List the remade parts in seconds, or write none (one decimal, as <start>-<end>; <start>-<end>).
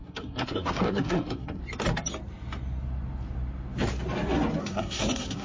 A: 0.0-1.6; 4.6-5.4